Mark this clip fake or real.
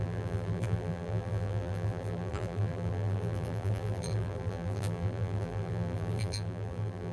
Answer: fake